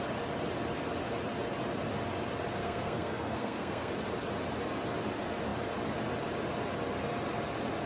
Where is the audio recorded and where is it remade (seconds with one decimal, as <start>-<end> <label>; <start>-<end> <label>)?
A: 0.0-2.6 recorded; 2.6-3.9 remade; 3.9-7.9 recorded